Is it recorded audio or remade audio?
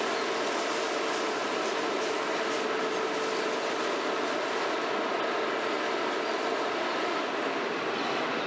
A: recorded